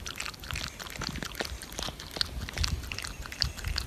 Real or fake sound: real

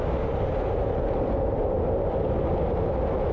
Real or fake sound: real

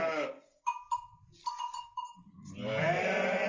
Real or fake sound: real